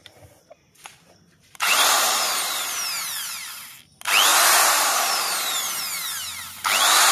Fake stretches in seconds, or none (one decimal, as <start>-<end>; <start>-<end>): 0.0-3.1; 4.3-5.8